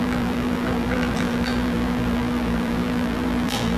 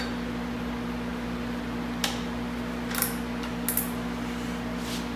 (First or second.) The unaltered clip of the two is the second